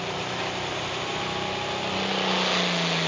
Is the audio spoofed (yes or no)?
no